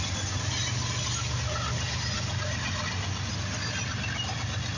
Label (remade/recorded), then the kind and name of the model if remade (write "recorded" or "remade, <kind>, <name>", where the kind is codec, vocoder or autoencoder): recorded